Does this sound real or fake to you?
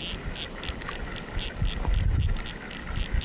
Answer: real